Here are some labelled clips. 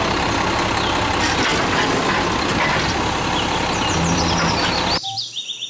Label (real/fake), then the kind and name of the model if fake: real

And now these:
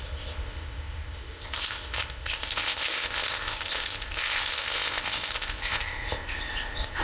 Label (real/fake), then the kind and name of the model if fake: fake, codec, ZipCodec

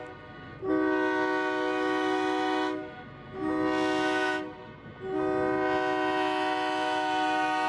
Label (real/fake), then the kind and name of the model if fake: real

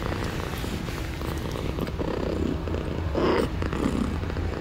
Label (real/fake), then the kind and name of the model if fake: real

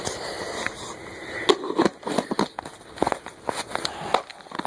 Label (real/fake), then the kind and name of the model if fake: real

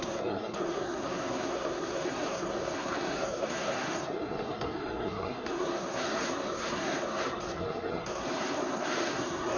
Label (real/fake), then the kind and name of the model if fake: fake, codec, SNAC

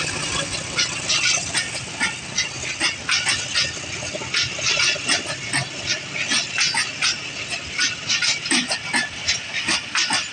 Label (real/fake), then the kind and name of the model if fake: real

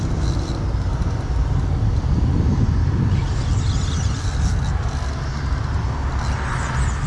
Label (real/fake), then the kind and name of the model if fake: real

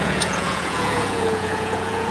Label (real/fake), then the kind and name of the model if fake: fake, vocoder, Vocos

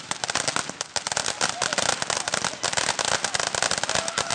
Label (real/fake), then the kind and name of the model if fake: real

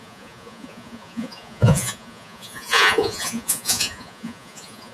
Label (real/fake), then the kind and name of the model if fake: fake, vocoder, Vocos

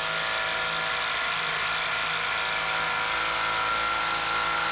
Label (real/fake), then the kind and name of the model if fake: real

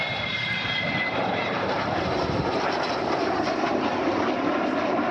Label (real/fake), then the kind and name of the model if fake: fake, vocoder, BigVGAN v2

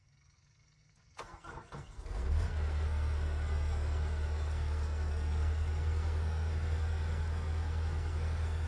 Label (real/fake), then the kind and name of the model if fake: fake, codec, SNAC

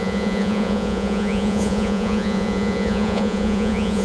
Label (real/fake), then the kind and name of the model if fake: fake, vocoder, Vocos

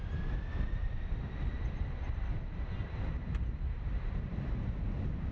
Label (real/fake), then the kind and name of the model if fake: real